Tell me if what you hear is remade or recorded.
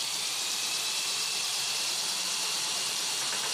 remade